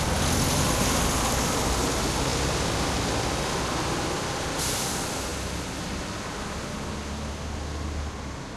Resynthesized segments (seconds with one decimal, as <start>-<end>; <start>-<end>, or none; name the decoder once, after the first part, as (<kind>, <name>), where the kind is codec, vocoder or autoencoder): none